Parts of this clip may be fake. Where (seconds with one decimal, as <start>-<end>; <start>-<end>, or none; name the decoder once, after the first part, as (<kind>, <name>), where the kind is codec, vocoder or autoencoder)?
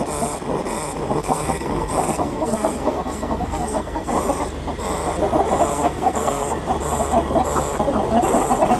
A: 1.2-4.2 (codec, SNAC); 5.7-6.6